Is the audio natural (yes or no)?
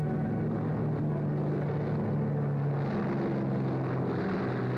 yes